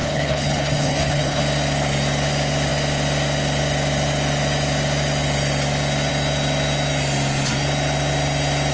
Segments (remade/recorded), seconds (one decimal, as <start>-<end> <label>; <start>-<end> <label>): 0.0-1.4 remade; 1.4-8.7 recorded